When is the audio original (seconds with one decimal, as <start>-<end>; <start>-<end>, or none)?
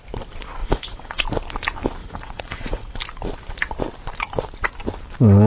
0.0-0.6; 1.2-2.0; 3.0-5.5